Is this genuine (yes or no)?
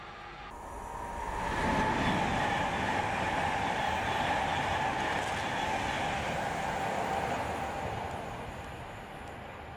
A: yes